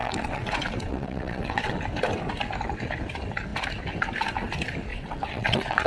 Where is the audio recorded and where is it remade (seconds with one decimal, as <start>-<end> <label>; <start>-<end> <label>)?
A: 0.0-1.7 remade; 1.7-4.9 recorded; 4.9-5.9 remade